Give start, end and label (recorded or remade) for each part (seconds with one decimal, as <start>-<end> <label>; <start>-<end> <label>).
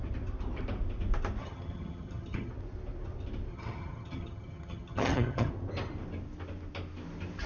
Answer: 0.0-1.4 recorded; 1.4-2.5 remade; 2.5-3.5 recorded; 3.5-5.5 remade; 5.5-7.5 recorded